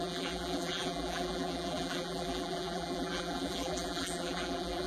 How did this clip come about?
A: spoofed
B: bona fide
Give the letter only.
A